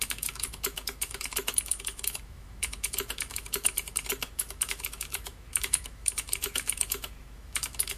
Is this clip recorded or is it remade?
remade